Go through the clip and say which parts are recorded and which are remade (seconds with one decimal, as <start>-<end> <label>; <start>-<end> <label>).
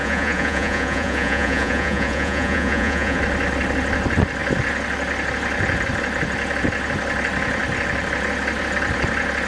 0.0-3.2 remade; 3.2-9.5 recorded